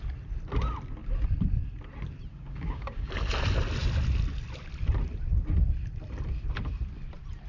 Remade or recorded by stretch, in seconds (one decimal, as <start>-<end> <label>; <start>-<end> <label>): 0.0-2.3 recorded; 2.3-3.1 remade; 3.1-7.5 recorded